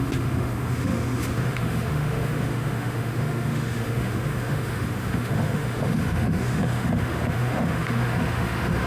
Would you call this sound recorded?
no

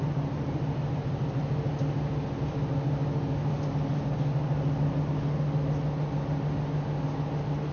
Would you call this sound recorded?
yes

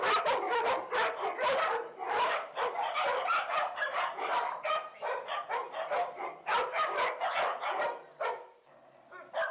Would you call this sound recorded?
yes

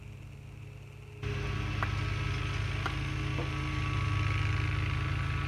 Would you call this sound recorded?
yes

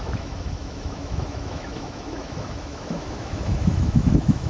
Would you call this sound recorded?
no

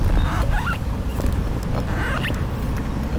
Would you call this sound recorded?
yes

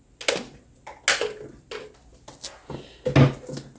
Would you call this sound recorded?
yes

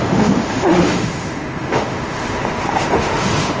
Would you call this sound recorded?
no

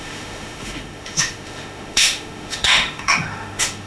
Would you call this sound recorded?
no